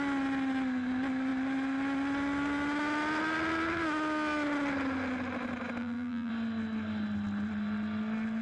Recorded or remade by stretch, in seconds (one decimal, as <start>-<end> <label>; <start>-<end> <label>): 0.0-5.8 recorded; 5.8-6.3 remade; 6.3-8.4 recorded